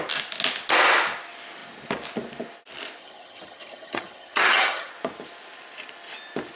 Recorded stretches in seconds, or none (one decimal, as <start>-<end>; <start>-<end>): 0.0-3.0; 4.9-6.6

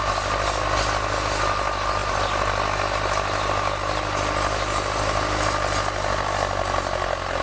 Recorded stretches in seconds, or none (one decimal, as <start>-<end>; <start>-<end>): 0.0-7.4

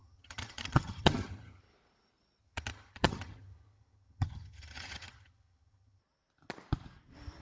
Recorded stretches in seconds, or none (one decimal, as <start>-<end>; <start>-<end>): 1.6-2.4; 6.0-7.4

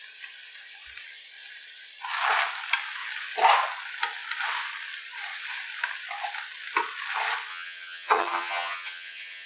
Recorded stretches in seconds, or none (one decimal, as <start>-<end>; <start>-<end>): 0.0-7.5

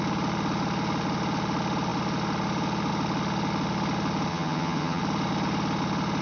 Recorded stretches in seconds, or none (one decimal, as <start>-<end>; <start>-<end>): 0.0-4.3; 5.0-6.2